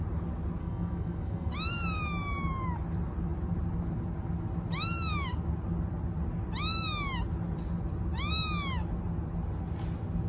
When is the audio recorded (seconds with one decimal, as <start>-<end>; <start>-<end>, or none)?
0.0-0.6; 1.5-10.3